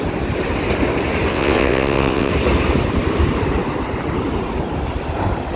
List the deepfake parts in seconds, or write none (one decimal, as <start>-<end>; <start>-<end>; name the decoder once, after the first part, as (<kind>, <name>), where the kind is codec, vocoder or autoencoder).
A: 1.3-2.3 (vocoder, WaveNeXt)